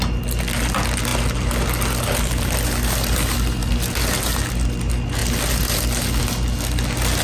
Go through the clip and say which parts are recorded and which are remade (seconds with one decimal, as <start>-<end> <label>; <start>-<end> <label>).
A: 0.0-7.2 recorded

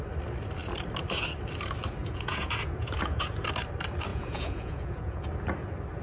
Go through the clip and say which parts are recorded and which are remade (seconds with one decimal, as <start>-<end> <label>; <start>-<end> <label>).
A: 0.0-2.0 recorded; 2.0-3.3 remade; 3.3-4.1 recorded; 4.1-5.3 remade; 5.3-6.0 recorded

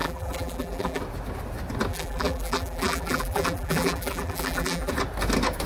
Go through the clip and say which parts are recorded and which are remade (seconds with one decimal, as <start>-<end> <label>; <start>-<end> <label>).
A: 0.0-1.0 remade; 1.0-1.9 recorded; 1.9-4.9 remade; 4.9-5.7 recorded

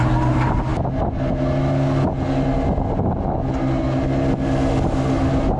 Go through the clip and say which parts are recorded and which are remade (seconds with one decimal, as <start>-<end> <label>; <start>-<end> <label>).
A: 0.0-5.6 recorded